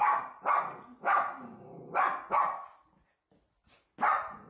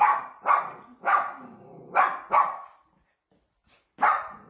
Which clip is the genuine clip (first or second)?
first